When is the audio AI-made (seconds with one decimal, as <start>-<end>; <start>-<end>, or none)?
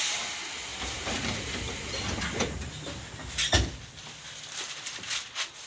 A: none